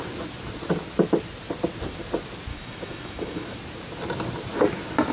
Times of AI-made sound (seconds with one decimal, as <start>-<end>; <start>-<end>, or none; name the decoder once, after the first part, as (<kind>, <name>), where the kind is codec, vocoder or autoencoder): 2.5-3.6 (autoencoder, DAC-VAE)